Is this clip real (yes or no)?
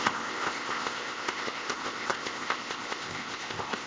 no